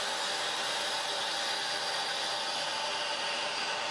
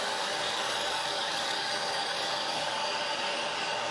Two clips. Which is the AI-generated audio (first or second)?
second